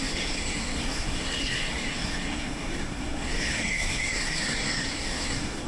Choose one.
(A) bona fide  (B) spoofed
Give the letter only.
B